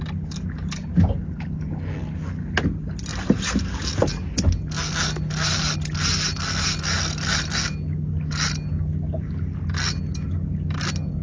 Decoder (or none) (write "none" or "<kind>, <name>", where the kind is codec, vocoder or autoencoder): none